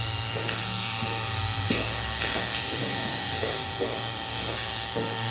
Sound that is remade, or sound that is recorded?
remade